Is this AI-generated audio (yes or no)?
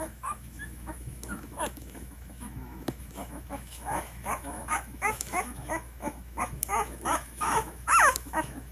yes